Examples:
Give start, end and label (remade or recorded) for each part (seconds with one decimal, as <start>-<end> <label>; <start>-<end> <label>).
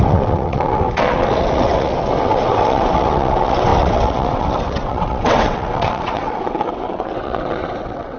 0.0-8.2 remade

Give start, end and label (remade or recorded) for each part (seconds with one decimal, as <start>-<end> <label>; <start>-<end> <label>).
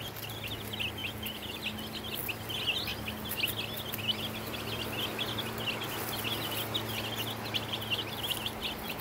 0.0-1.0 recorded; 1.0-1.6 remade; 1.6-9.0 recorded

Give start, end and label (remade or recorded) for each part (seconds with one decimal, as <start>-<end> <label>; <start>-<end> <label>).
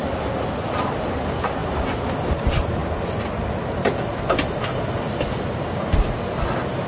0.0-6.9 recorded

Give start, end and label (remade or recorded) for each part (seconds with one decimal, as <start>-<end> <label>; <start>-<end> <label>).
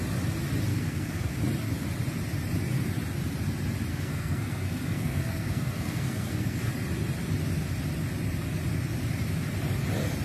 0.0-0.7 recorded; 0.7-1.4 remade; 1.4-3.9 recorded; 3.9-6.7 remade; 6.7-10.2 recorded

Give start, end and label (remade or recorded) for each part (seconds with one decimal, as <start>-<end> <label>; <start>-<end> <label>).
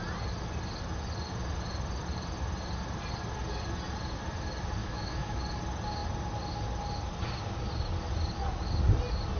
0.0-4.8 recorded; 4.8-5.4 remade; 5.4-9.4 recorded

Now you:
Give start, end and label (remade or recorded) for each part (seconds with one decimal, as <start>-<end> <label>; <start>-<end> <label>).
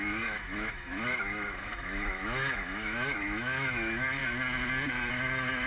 0.0-4.2 remade; 4.2-5.1 recorded; 5.1-5.7 remade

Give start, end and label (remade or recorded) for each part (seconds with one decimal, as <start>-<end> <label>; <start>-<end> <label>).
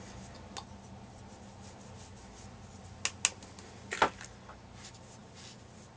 0.0-6.0 recorded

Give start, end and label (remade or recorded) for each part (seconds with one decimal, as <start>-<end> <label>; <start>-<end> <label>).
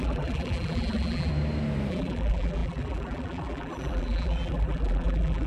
0.0-1.3 remade; 1.3-1.9 recorded; 1.9-5.5 remade